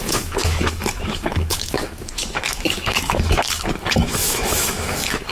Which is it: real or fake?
fake